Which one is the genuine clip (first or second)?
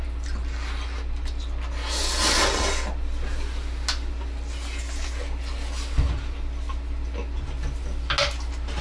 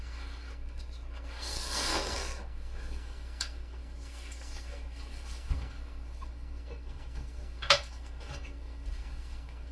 first